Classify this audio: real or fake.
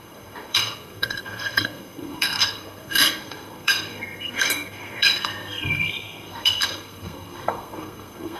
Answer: fake